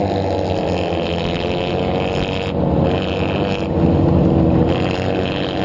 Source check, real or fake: real